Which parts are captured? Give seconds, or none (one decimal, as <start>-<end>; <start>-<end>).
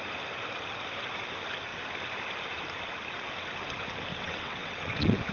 0.0-4.1